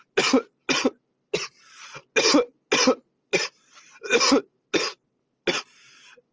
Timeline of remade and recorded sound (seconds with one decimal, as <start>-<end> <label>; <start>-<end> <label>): 0.0-6.3 recorded